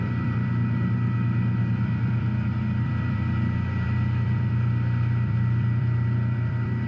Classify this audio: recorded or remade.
remade